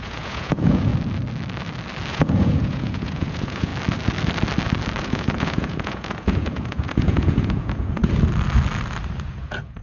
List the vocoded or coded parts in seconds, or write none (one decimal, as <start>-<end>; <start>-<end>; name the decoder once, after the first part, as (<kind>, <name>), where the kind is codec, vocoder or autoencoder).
0.0-0.9 (vocoder, Vocos); 2.1-3.7; 5.0-8.0; 9.3-9.8